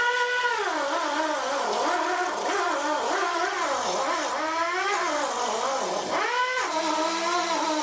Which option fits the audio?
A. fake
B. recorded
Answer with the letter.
B